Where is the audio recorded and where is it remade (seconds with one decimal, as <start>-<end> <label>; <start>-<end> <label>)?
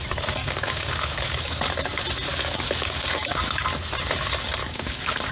0.0-0.4 recorded; 0.4-1.6 remade; 1.6-2.3 recorded; 2.3-3.6 remade; 3.6-4.6 recorded; 4.6-5.3 remade